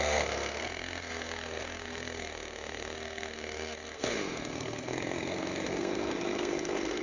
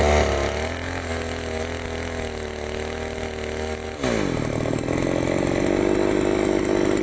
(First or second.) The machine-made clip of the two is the first